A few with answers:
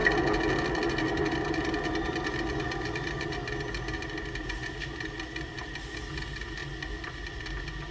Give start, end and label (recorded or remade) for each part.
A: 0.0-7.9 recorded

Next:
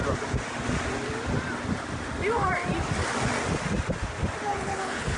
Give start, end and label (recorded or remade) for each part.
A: 0.0-4.5 recorded; 4.5-5.2 remade

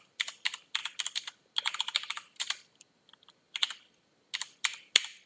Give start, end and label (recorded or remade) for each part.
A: 0.0-5.3 recorded

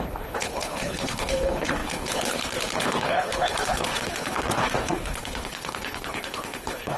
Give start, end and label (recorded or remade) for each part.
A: 0.0-7.0 remade

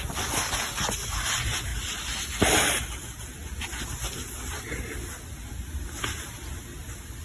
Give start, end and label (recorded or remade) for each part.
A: 0.0-7.2 recorded

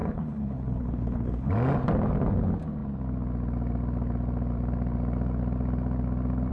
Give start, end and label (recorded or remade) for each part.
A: 0.0-1.5 remade; 1.5-6.5 recorded

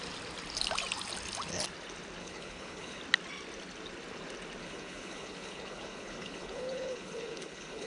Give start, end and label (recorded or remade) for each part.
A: 0.0-2.2 recorded; 2.2-3.0 remade; 3.0-4.6 recorded; 4.6-7.9 remade